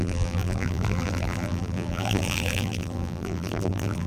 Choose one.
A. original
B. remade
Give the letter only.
B